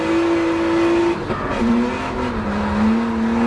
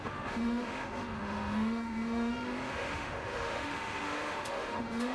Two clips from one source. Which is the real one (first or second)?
first